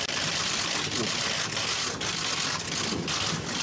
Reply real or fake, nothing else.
real